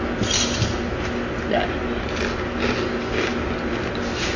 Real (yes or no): yes